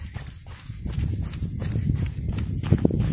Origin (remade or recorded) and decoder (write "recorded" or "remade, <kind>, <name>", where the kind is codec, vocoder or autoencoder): recorded